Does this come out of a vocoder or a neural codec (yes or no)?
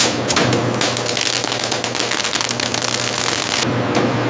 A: no